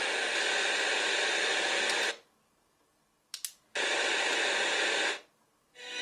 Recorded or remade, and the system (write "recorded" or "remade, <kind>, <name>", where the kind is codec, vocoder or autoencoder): recorded